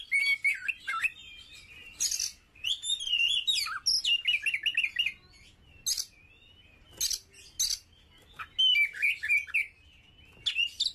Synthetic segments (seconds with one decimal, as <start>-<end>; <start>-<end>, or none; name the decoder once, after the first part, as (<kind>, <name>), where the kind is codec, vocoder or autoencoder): none